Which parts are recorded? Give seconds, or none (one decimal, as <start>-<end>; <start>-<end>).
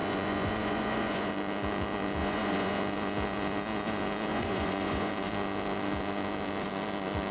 1.3-2.2; 2.8-4.3; 5.1-7.3